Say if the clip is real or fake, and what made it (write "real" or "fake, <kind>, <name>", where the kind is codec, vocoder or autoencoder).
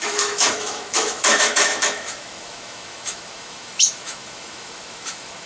fake, autoencoder, DAC-VAE